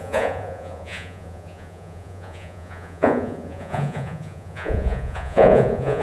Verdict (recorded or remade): remade